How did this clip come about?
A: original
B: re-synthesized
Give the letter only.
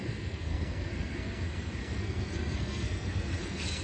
B